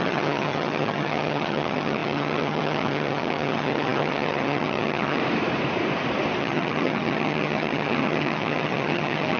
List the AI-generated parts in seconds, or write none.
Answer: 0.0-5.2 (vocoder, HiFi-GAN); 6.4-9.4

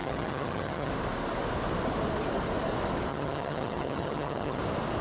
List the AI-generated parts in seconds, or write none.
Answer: 0.0-0.9 (vocoder, HiFi-GAN); 3.1-4.6